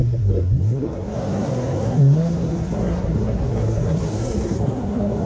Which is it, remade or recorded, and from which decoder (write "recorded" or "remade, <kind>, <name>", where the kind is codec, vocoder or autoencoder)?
remade, codec, SNAC